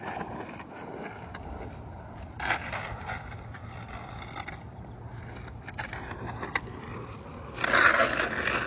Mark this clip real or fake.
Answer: real